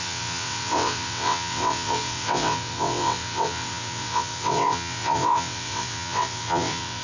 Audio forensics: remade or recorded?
remade